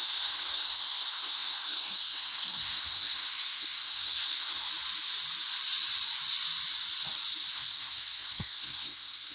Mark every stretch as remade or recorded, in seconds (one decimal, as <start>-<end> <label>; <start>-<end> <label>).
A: 0.0-4.7 remade; 4.7-7.5 recorded; 7.5-9.3 remade